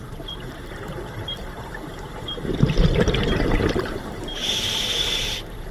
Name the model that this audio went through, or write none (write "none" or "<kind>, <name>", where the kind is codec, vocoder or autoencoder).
vocoder, BigVGAN v2